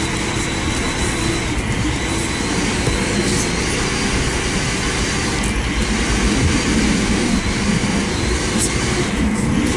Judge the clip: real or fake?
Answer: real